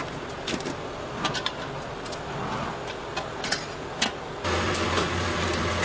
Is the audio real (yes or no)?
yes